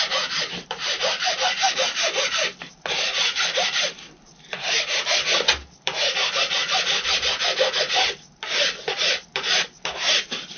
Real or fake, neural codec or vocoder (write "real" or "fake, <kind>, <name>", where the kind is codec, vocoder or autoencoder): fake, vocoder, BigVGAN v2